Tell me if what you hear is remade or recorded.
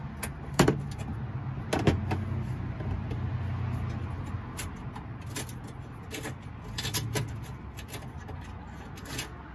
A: recorded